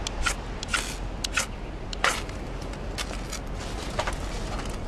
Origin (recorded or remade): recorded